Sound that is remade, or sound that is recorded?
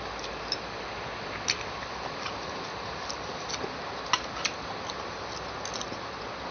recorded